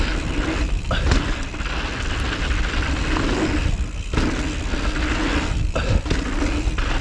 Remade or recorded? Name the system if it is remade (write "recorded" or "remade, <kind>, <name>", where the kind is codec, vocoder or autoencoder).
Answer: recorded